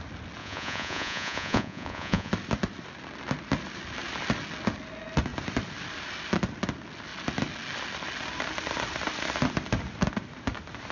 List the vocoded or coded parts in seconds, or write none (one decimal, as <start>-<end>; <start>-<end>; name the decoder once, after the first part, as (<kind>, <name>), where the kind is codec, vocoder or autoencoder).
0.4-2.3 (vocoder, Vocos)